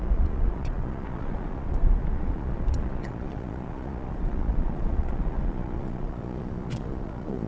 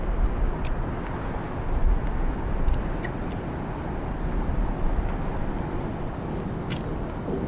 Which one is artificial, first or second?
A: first